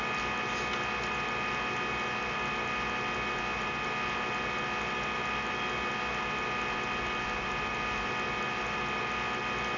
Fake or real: real